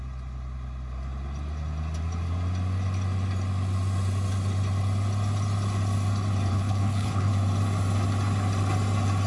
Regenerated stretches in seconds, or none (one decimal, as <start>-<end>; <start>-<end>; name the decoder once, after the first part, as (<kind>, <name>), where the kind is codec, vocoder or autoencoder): 6.5-7.3 (codec, HILCodec)